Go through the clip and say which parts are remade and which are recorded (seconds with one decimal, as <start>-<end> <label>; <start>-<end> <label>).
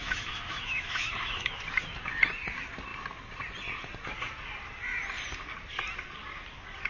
0.0-1.5 remade; 1.5-6.9 recorded